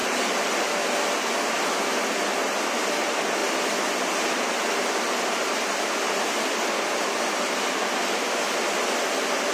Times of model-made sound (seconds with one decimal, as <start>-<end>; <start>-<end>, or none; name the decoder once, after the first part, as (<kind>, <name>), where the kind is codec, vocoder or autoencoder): 0.0-0.5 (vocoder, BigVGAN v2)